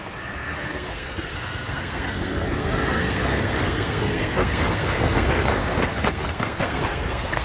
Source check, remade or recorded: remade